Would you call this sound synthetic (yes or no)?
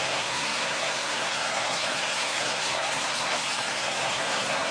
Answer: yes